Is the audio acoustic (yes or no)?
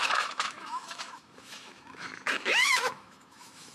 no